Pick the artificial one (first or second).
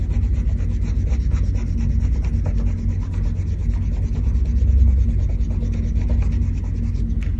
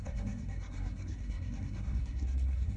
second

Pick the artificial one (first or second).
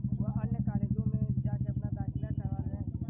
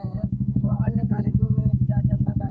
second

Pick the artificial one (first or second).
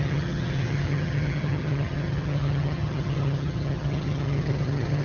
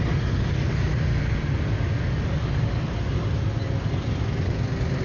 first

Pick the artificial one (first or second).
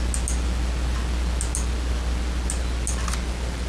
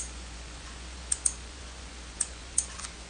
second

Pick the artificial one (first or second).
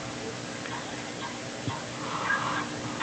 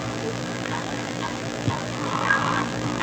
second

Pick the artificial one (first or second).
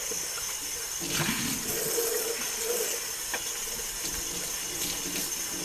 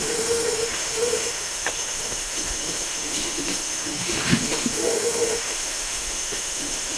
second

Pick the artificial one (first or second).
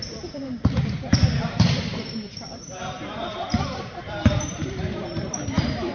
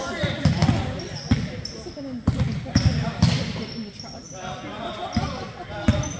first